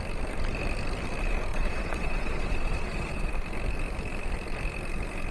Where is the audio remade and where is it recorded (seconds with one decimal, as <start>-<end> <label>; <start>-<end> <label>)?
0.0-1.5 recorded; 1.5-3.3 remade; 3.3-5.3 recorded